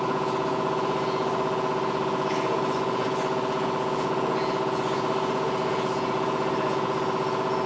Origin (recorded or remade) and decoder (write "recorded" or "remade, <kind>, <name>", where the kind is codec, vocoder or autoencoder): remade, vocoder, Vocos